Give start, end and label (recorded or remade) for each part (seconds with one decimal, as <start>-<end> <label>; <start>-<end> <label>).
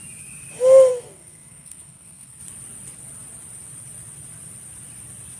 0.0-0.9 recorded; 0.9-2.4 remade; 2.4-5.4 recorded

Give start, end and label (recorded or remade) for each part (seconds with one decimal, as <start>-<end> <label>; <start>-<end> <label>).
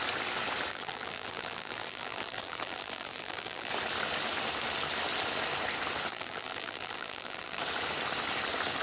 0.0-0.7 recorded; 0.7-3.7 remade; 3.7-6.1 recorded; 6.1-7.6 remade; 7.6-8.8 recorded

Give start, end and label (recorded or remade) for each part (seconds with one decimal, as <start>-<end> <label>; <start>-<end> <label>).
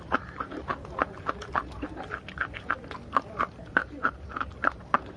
0.0-0.7 remade; 0.7-3.3 recorded; 3.3-5.2 remade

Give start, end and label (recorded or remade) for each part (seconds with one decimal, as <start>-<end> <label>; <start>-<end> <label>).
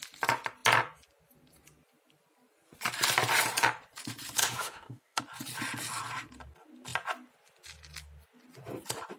0.0-4.4 recorded; 4.4-5.2 remade; 5.2-9.2 recorded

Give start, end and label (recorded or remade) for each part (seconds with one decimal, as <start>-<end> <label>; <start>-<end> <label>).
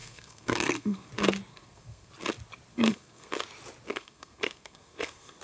0.0-1.1 remade; 1.1-1.5 recorded; 1.5-2.1 remade; 2.1-2.7 recorded; 2.7-3.3 remade; 3.3-3.9 recorded; 3.9-5.4 remade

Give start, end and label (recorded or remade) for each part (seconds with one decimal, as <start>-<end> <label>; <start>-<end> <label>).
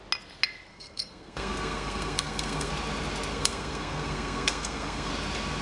0.0-0.7 recorded; 0.7-2.7 remade; 2.7-3.3 recorded; 3.3-5.1 remade; 5.1-5.6 recorded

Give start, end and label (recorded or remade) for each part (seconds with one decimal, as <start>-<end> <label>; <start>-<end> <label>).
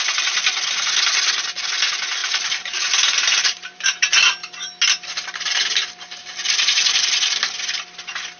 0.0-2.2 recorded; 2.2-4.1 remade; 4.1-6.2 recorded; 6.2-7.0 remade; 7.0-8.4 recorded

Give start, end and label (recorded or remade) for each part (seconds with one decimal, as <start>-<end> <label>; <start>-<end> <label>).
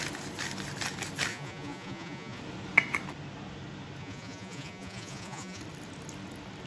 0.0-1.3 recorded; 1.3-2.4 remade; 2.4-4.0 recorded; 4.0-5.6 remade; 5.6-6.7 recorded